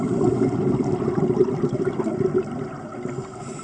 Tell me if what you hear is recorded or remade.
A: recorded